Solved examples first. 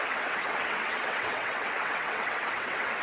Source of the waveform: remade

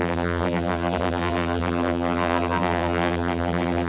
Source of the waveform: remade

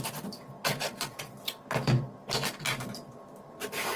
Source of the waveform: recorded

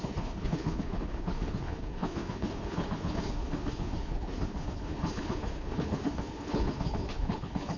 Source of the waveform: remade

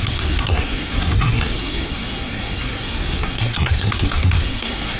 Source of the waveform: remade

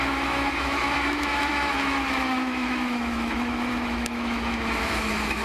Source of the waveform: remade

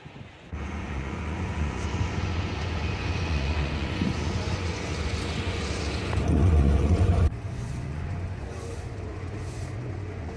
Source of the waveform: remade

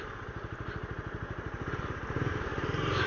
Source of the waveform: recorded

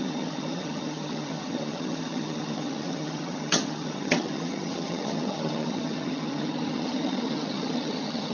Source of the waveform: remade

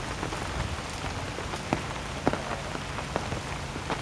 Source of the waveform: recorded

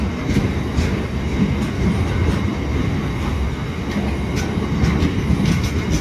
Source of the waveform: recorded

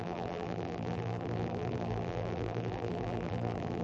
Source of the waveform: remade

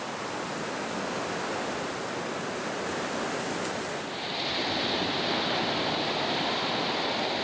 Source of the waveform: recorded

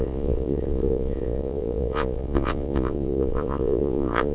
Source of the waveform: remade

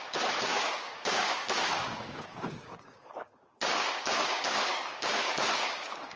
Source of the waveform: remade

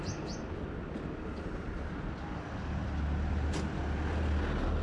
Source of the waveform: recorded